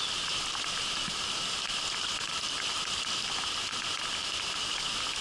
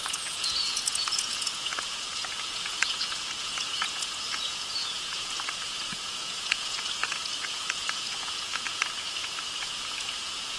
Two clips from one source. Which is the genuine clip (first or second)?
first